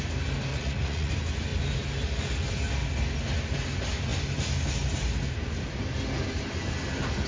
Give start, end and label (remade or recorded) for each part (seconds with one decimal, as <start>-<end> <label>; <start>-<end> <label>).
0.0-0.5 recorded; 0.5-1.1 remade; 1.1-7.3 recorded